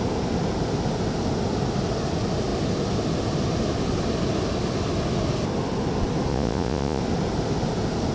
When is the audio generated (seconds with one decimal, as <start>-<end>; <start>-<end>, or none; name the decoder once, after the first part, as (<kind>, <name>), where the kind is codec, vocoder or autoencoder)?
6.3-7.0 (vocoder, Vocos)